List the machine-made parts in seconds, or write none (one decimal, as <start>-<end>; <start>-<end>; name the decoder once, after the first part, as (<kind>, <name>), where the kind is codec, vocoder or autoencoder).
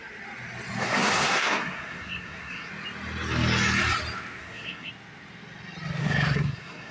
0.8-2.7 (codec, SNAC); 4.4-4.9; 6.0-6.9